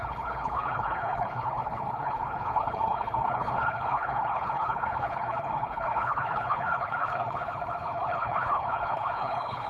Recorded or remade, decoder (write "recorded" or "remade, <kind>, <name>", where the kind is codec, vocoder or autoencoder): remade, codec, HILCodec